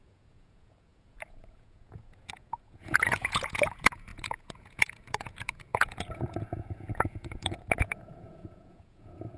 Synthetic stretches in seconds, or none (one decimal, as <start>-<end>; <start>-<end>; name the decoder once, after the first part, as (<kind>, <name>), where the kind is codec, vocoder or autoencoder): 0.0-9.4 (vocoder, Vocos)